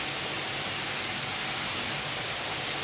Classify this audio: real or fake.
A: real